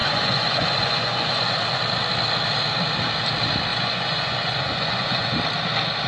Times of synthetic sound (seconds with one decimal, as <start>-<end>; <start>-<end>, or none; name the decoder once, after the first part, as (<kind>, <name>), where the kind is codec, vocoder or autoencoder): 0.0-1.8 (vocoder, Vocos); 3.7-5.4